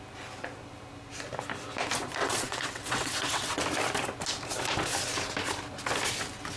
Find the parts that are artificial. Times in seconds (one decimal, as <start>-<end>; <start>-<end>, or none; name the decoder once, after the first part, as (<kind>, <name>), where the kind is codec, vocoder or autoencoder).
2.2-3.6 (vocoder, WaveNeXt)